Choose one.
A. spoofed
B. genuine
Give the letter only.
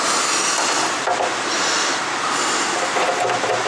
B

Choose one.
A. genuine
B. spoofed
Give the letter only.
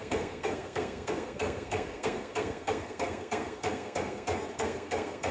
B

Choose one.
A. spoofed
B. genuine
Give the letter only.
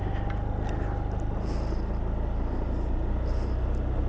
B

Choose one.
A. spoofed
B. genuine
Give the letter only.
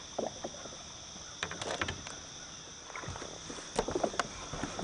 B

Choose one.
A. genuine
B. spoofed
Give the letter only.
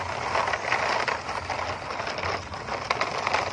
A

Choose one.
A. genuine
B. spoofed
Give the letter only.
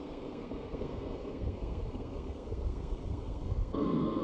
B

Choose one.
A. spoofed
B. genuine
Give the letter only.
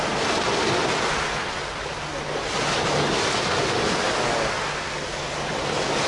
B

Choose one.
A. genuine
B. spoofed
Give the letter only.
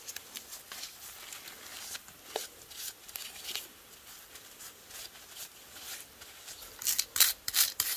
A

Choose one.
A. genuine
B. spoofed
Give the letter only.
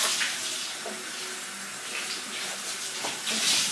A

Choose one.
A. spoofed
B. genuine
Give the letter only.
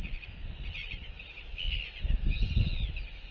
B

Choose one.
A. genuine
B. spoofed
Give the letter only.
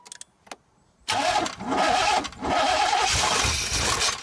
A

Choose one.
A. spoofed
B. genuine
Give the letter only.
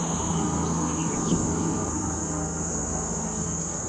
A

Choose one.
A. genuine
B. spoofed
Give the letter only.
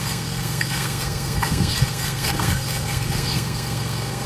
B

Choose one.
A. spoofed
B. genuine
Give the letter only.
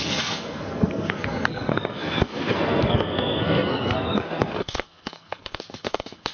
A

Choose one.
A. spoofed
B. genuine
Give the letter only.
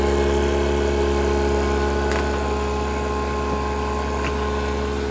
B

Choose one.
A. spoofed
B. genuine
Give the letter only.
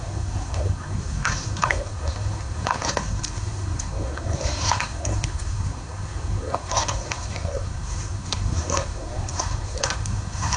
A